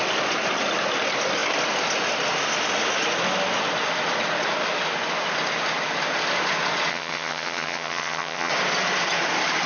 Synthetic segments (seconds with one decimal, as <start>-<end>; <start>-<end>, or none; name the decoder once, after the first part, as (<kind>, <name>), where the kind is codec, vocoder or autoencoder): 6.9-8.5 (vocoder, HiFi-GAN)